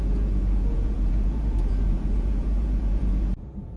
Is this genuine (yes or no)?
no